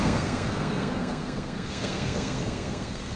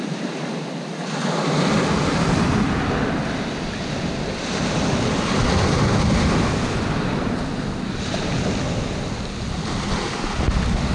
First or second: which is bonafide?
second